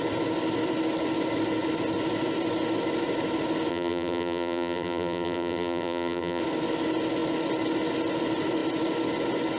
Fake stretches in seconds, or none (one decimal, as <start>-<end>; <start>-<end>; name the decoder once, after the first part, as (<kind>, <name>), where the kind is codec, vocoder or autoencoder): 3.7-6.4 (vocoder, BigVGAN v2)